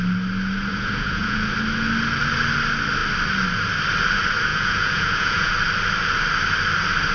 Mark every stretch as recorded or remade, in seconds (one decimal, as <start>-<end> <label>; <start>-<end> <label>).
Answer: 0.0-0.7 recorded; 0.7-1.5 remade; 1.5-4.5 recorded; 4.5-5.5 remade; 5.5-7.1 recorded